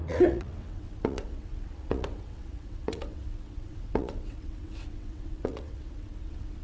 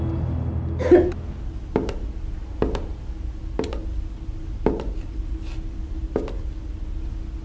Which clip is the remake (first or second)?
first